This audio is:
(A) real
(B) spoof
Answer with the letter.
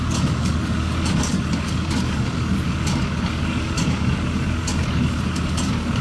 B